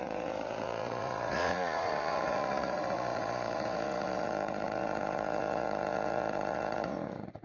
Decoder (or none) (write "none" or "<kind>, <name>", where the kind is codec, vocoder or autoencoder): vocoder, Vocos